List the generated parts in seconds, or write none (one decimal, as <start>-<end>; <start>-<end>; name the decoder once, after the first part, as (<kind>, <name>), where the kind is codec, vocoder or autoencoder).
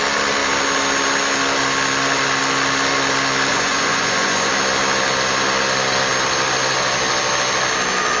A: 3.5-4.5 (vocoder, Vocos)